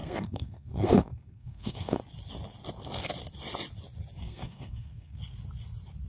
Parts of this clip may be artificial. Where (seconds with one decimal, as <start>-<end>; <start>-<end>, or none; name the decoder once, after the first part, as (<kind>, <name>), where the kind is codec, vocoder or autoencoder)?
0.0-2.0 (codec, SNAC); 4.2-5.2

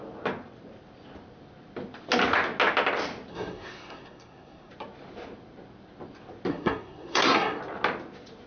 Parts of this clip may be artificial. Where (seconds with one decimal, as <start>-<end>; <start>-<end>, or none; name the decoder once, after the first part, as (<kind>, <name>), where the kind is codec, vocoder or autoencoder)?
3.3-4.7 (codec, SNAC); 6.5-7.6

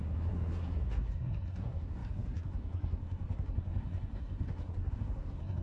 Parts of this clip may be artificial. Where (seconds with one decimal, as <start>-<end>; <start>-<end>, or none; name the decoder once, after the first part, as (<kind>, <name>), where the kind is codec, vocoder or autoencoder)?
0.0-5.6 (codec, SNAC)

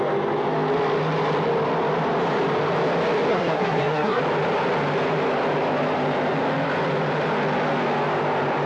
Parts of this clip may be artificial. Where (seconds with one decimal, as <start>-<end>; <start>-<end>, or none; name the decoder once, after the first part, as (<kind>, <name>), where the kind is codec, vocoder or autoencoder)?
3.3-4.2 (codec, SNAC)

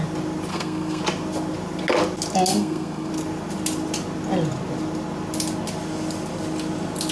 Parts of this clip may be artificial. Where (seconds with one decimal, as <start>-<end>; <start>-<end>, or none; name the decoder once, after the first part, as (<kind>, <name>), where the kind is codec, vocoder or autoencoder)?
0.5-1.0 (codec, SNAC); 2.5-3.1

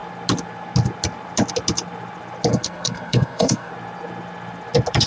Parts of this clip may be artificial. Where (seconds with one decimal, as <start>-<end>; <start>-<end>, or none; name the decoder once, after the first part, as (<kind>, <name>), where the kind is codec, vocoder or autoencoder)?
2.5-3.7 (codec, SNAC)